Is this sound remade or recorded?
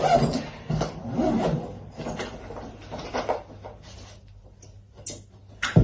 recorded